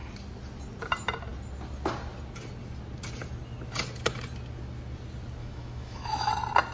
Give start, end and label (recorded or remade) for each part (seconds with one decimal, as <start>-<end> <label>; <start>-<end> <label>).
0.0-5.4 recorded; 5.4-6.3 remade; 6.3-6.7 recorded